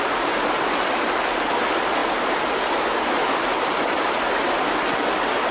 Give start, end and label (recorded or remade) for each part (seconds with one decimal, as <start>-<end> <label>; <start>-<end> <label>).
0.0-5.5 recorded